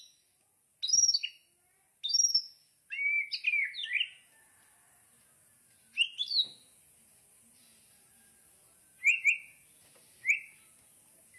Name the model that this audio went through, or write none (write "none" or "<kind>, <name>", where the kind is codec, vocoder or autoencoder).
none